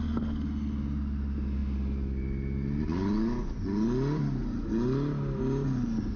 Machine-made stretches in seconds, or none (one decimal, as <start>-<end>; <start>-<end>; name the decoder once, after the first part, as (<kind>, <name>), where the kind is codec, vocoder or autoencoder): none

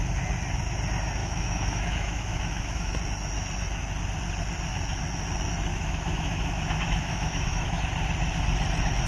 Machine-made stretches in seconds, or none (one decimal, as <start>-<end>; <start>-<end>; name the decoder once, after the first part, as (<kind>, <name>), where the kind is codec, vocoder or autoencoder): 1.2-2.9 (autoencoder, DAC-VAE); 5.7-7.8

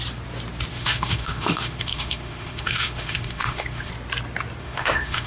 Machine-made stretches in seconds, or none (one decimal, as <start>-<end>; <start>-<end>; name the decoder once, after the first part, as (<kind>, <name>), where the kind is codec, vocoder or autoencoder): 0.7-3.9 (autoencoder, DAC-VAE); 4.6-5.3

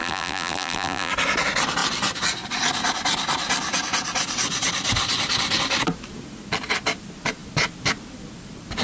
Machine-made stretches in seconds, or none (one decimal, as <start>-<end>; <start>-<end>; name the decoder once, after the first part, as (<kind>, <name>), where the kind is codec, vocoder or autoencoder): 0.0-1.1 (vocoder, BigVGAN v2)